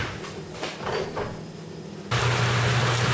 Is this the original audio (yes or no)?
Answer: yes